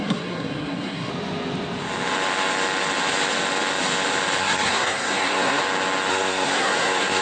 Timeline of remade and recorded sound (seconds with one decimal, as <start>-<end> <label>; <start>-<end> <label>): 0.0-1.1 remade; 1.1-4.4 recorded; 4.4-5.6 remade; 5.6-6.1 recorded; 6.1-7.2 remade